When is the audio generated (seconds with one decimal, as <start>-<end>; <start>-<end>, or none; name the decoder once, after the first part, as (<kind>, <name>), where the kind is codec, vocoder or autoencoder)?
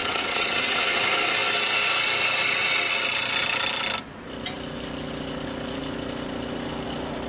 0.0-0.8 (vocoder, WaveNeXt)